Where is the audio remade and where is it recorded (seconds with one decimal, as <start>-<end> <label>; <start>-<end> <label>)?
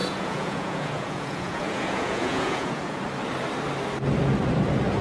0.0-3.0 remade; 3.0-5.0 recorded